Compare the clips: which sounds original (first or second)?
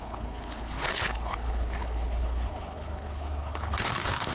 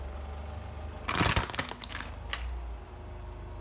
second